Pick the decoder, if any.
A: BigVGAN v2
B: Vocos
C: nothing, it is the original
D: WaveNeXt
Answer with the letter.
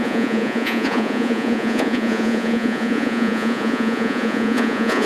B